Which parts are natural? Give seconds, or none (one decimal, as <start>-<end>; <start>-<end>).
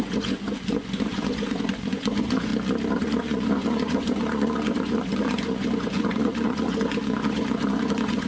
2.5-3.0